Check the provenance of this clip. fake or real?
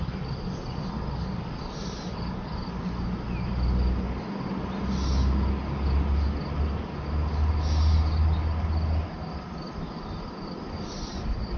real